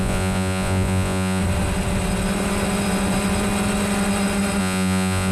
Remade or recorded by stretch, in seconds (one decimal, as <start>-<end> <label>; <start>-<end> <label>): 0.0-1.4 remade; 1.4-4.6 recorded; 4.6-5.3 remade